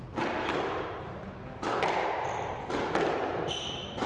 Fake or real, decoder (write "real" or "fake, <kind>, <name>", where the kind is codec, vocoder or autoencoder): real